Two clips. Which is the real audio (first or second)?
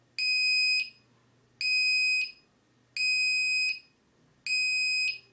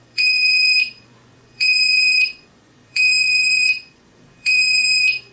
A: first